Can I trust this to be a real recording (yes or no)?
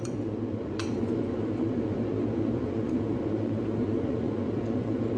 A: no